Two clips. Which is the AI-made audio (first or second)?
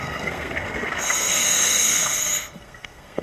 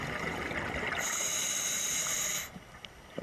first